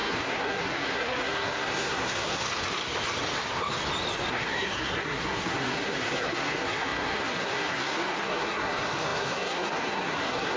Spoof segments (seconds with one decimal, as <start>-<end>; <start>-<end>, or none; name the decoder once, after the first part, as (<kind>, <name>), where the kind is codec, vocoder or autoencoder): 0.0-2.4 (codec, SNAC); 4.3-10.6

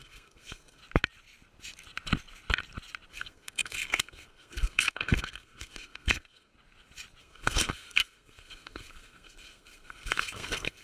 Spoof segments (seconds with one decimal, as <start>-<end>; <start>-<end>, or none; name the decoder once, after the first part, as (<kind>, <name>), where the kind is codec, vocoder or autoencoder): 0.0-0.8 (codec, SNAC); 3.1-6.5; 7.2-10.8

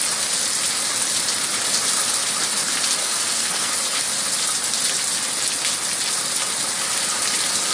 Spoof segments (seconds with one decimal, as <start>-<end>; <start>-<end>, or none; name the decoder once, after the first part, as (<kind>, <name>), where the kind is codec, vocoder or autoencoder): 3.0-3.7 (codec, SNAC)

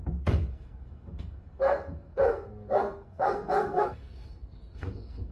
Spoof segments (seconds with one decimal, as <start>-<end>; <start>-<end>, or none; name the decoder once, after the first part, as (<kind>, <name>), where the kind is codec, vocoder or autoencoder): 0.0-5.3 (codec, SNAC)

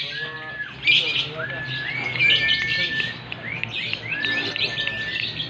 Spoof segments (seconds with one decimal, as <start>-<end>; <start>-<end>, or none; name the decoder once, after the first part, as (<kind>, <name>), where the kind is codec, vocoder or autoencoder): none